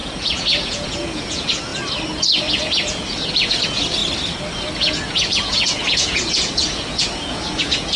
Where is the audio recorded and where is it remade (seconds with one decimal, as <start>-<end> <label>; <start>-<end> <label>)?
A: 0.0-1.7 remade; 1.7-2.6 recorded; 2.6-4.0 remade; 4.0-4.7 recorded; 4.7-8.0 remade